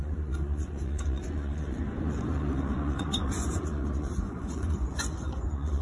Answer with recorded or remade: remade